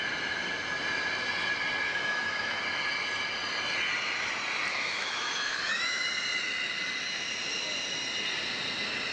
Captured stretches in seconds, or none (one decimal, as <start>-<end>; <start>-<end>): 0.0-1.9; 2.6-4.7; 6.1-9.1